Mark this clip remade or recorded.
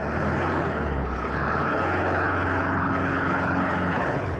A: remade